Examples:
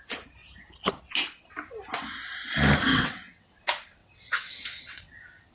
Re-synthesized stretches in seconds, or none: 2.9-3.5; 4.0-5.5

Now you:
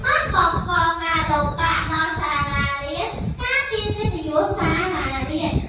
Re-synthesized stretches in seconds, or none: 0.0-2.2; 4.7-5.7